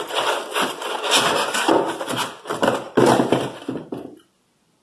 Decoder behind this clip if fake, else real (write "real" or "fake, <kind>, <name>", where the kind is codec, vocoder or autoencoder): real